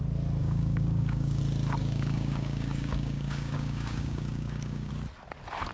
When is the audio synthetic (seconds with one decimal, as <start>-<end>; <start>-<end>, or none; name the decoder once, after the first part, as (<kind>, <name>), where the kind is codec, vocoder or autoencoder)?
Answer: 0.4-1.4 (codec, DAC); 1.8-4.9